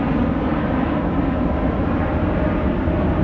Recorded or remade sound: recorded